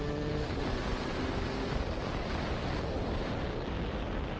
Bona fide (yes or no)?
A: yes